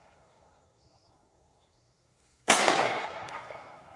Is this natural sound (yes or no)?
no